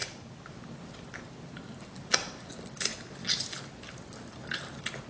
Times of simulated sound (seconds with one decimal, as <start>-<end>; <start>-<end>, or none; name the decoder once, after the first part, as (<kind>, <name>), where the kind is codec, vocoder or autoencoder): none